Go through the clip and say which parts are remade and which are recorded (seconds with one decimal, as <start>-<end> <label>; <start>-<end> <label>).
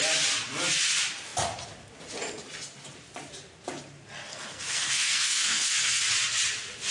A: 0.0-4.3 recorded; 4.3-6.0 remade; 6.0-6.9 recorded